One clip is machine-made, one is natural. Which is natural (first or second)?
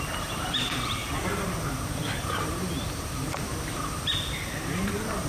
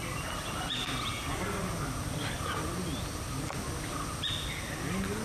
second